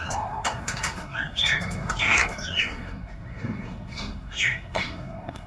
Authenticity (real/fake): fake